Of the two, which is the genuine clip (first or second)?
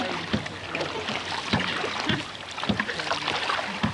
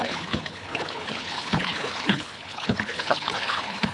first